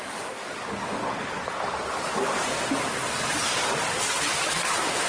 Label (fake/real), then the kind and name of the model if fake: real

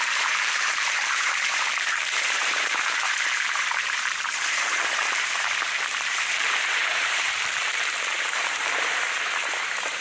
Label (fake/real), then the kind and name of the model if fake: fake, vocoder, BigVGAN v2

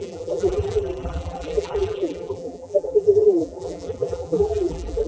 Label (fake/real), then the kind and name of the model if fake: fake, vocoder, BigVGAN v2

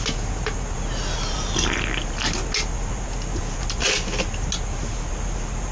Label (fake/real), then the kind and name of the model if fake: real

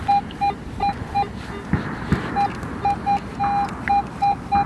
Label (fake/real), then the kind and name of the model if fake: real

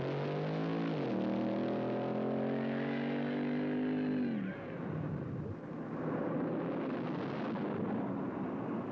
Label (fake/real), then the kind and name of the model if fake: real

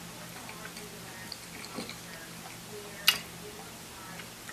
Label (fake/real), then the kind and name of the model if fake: real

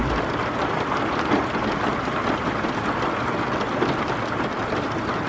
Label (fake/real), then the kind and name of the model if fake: real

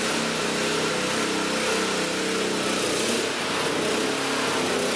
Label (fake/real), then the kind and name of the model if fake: real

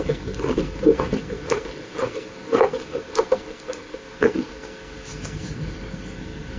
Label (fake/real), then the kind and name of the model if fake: fake, codec, SNAC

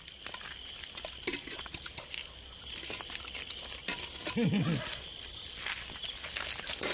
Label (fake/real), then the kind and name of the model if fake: real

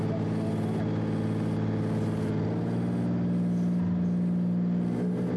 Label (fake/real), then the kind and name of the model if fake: real